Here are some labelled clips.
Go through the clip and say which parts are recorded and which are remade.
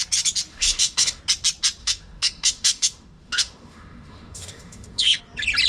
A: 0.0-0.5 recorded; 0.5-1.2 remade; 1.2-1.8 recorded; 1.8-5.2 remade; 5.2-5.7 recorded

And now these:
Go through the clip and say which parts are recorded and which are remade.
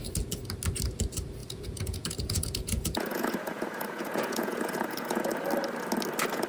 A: 0.0-1.4 recorded; 1.4-5.3 remade; 5.3-6.5 recorded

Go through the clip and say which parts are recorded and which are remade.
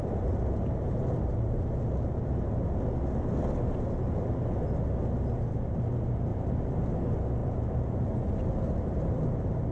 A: 0.0-2.6 remade; 2.6-6.3 recorded; 6.3-6.9 remade; 6.9-7.4 recorded; 7.4-8.5 remade; 8.5-9.7 recorded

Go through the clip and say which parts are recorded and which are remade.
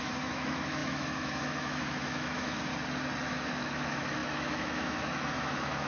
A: 0.0-2.7 remade; 2.7-3.3 recorded; 3.3-5.9 remade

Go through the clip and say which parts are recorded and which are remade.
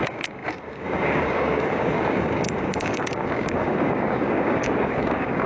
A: 0.0-5.5 remade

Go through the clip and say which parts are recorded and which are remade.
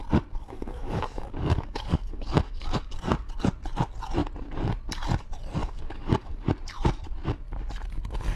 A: 0.0-0.4 recorded; 0.4-3.3 remade; 3.3-5.6 recorded; 5.6-6.5 remade; 6.5-8.4 recorded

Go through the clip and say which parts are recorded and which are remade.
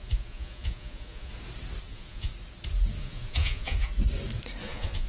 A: 0.0-1.3 remade; 1.3-1.8 recorded; 1.8-2.3 remade; 2.3-3.0 recorded; 3.0-3.9 remade; 3.9-4.6 recorded; 4.6-5.1 remade